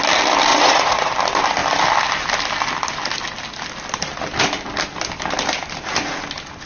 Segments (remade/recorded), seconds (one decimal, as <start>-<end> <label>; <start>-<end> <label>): 0.0-0.5 recorded; 0.5-1.1 remade; 1.1-6.7 recorded